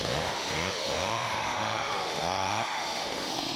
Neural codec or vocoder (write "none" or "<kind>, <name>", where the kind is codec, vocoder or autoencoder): autoencoder, DAC-VAE